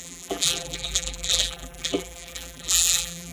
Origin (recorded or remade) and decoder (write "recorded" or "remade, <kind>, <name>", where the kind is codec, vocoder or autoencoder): remade, vocoder, BigVGAN v2